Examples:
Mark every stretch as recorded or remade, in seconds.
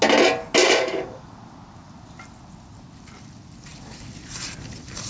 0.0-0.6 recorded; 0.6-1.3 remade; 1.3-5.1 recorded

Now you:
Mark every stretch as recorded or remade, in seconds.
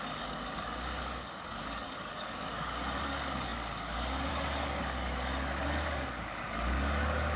0.0-7.4 remade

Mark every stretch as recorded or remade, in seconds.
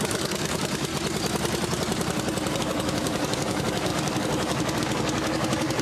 0.0-0.9 remade; 0.9-2.6 recorded; 2.6-5.8 remade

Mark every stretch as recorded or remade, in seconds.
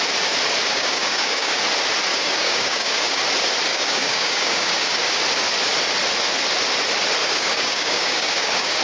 0.0-0.7 recorded; 0.7-1.6 remade; 1.6-2.1 recorded; 2.1-3.2 remade; 3.2-3.7 recorded; 3.7-5.2 remade; 5.2-7.2 recorded; 7.2-8.8 remade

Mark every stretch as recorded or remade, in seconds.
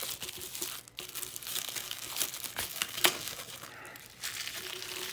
0.0-1.5 recorded; 1.5-2.1 remade; 2.1-2.7 recorded; 2.7-3.7 remade; 3.7-5.1 recorded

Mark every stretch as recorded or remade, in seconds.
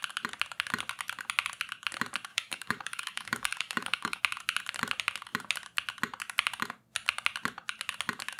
0.0-2.3 recorded; 2.3-4.2 remade; 4.2-8.4 recorded